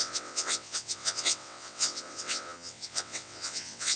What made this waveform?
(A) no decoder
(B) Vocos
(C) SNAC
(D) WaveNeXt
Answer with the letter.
D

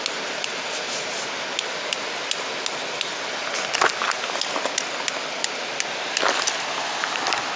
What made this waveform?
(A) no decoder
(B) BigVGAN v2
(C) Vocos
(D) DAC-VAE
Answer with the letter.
A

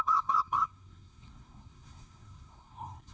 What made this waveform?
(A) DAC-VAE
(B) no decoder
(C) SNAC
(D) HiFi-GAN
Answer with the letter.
C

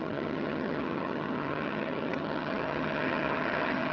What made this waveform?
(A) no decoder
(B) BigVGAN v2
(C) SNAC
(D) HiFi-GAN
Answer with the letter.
D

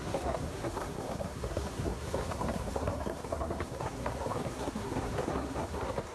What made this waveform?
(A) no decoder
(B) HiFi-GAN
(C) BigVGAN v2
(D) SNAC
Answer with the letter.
D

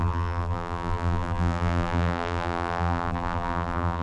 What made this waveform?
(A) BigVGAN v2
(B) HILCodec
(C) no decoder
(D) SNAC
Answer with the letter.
A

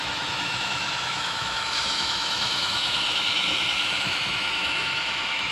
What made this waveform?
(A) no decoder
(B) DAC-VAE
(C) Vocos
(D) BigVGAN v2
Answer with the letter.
B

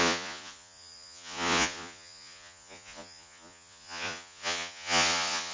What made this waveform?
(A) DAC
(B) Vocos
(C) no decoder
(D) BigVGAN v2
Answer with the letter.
B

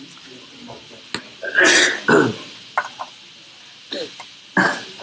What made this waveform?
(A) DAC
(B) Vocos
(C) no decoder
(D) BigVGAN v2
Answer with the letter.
C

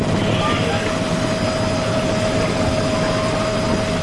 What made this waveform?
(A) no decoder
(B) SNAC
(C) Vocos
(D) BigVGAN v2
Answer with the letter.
A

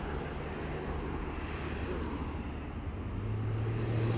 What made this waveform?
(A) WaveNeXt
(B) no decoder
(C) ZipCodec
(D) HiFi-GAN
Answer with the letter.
B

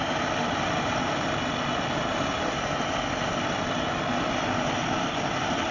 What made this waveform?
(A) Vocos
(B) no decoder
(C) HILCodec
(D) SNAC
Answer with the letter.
B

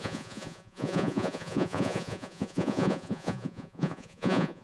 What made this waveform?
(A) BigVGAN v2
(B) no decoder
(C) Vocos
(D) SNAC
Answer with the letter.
C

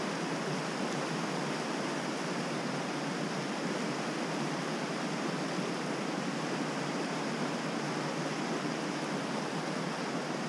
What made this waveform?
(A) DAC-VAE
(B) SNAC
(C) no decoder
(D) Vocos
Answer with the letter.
C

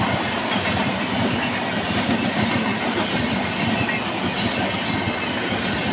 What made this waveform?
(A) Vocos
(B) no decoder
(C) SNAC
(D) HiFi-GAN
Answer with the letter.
B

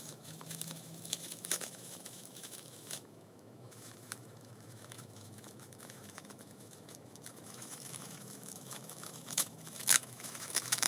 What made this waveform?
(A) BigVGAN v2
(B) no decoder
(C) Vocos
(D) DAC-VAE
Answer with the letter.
D